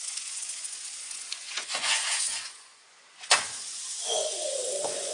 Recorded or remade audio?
remade